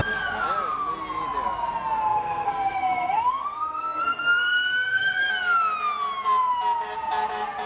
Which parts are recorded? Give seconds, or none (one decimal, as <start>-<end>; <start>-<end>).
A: 0.0-2.1; 5.3-7.7